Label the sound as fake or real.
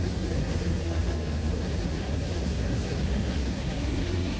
fake